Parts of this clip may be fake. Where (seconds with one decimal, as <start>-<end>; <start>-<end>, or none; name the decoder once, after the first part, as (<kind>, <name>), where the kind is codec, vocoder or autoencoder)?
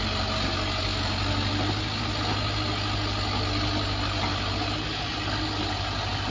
none